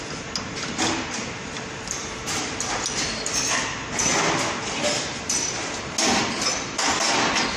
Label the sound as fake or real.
real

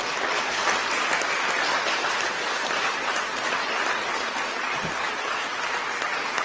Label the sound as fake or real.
real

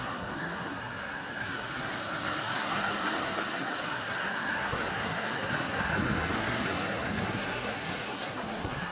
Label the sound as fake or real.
fake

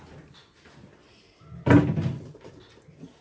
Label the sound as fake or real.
real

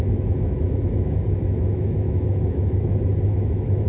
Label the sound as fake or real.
fake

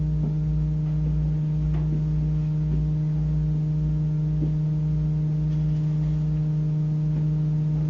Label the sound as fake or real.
real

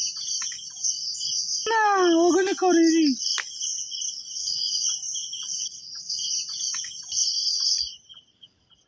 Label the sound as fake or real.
real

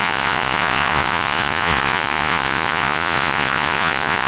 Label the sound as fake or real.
fake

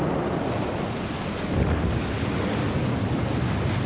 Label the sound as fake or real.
real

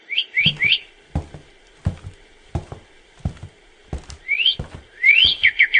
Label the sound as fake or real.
real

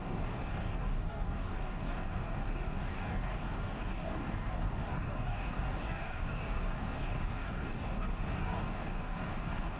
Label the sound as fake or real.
fake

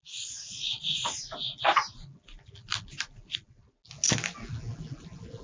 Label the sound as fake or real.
real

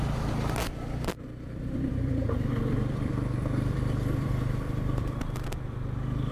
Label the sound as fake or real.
fake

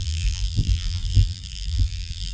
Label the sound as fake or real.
fake